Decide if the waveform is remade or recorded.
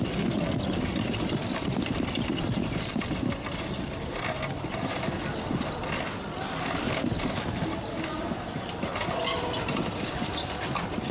recorded